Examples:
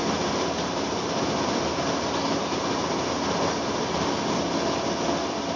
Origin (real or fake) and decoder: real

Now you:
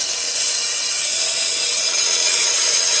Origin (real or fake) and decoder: fake, vocoder, WaveNeXt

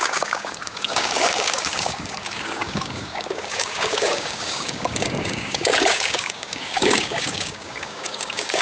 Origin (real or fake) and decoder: fake, codec, DAC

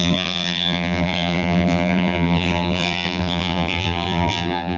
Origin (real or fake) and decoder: fake, vocoder, BigVGAN v2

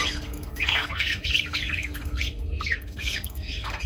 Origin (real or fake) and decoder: fake, codec, SNAC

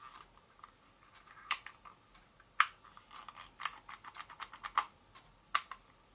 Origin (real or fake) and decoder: real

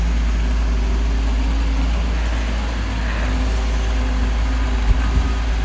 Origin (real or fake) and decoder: real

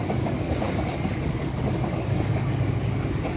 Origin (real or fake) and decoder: fake, codec, DAC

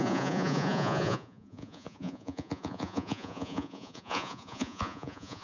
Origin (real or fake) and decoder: fake, vocoder, Vocos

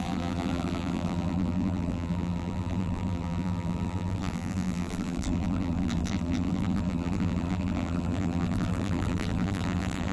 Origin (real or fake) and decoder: fake, vocoder, BigVGAN v2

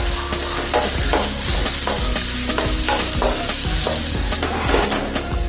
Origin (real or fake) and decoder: real